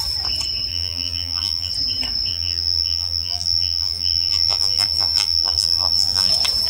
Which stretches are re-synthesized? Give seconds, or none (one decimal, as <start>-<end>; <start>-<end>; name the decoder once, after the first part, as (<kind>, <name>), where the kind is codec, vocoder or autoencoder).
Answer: 0.7-1.7 (vocoder, BigVGAN v2); 2.3-6.3